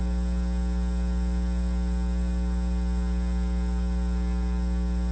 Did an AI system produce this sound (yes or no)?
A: no